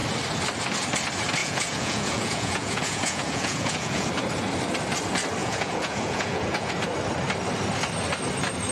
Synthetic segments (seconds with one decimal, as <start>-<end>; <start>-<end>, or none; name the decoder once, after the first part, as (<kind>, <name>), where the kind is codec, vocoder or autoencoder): 1.4-4.1 (vocoder, Vocos); 5.4-6.7